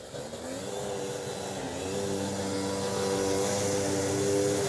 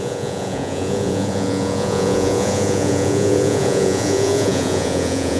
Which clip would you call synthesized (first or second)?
second